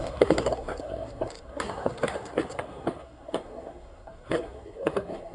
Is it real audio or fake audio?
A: fake